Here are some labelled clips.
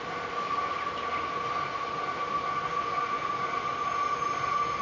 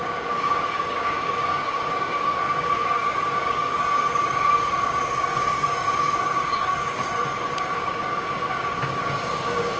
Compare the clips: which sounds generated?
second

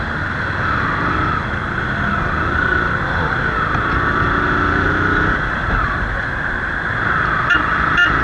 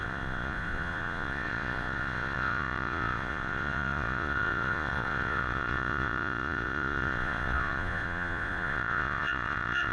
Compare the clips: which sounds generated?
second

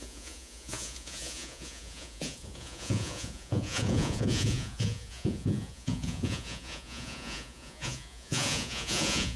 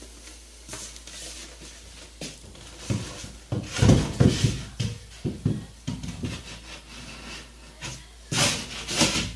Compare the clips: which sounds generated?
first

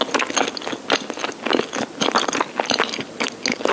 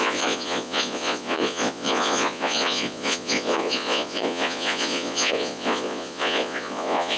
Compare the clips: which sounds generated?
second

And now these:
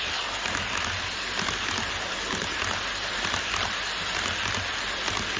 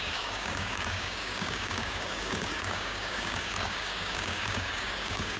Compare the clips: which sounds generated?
second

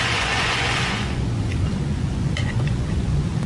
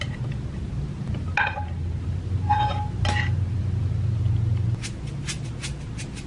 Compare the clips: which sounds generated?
first